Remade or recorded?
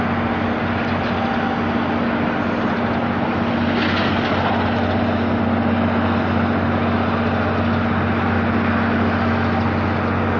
recorded